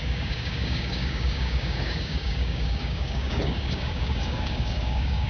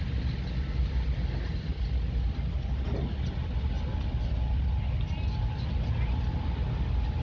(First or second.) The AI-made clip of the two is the first